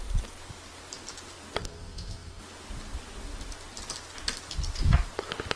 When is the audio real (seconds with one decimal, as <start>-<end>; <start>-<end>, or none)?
0.0-1.6; 2.4-5.6